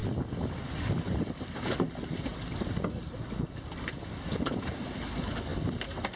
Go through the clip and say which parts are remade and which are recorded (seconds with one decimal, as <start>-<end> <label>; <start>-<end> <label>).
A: 0.0-1.5 remade; 1.5-5.5 recorded; 5.5-6.2 remade